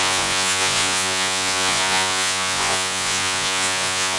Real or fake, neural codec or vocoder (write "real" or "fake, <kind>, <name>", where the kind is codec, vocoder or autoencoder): fake, vocoder, Vocos